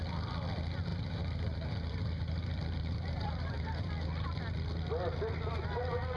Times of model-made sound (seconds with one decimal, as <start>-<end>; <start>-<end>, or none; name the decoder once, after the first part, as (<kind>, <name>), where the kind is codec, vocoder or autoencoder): 0.9-3.9 (vocoder, BigVGAN v2)